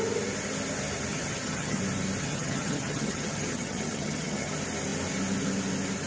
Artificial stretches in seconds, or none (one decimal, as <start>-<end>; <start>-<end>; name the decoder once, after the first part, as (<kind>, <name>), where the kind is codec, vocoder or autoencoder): 1.1-1.8 (vocoder, HiFi-GAN); 2.2-4.5